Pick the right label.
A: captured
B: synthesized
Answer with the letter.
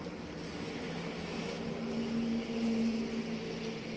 A